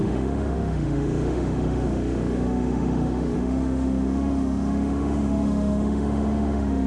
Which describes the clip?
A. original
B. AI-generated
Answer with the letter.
B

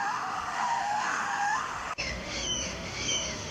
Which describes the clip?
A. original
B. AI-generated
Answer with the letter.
B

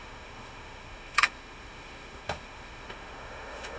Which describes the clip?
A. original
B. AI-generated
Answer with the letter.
B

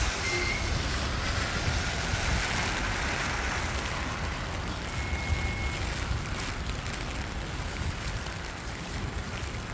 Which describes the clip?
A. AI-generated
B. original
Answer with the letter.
B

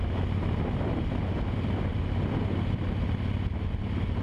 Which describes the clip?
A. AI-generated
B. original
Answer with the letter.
B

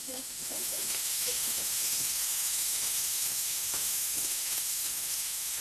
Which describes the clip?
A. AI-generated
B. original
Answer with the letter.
A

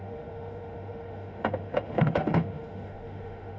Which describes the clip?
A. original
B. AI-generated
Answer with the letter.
B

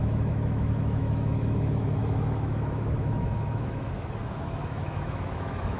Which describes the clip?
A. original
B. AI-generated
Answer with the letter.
B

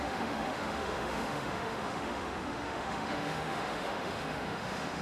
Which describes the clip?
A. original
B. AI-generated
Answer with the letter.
B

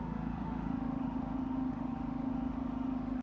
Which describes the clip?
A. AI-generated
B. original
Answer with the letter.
A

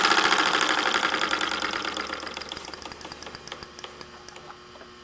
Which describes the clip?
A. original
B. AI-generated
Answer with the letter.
A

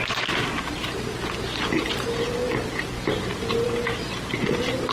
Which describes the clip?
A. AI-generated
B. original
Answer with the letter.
B